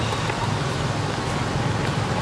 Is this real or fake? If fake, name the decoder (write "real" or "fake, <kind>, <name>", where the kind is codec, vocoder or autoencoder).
real